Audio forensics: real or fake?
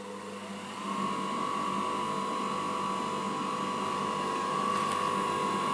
real